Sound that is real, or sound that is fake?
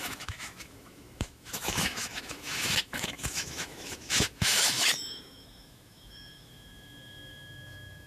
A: fake